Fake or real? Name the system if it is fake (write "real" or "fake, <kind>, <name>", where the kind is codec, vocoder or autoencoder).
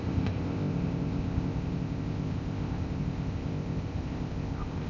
fake, codec, ZipCodec